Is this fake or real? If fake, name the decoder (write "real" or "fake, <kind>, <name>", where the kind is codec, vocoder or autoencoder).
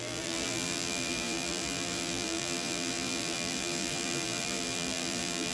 fake, vocoder, BigVGAN v2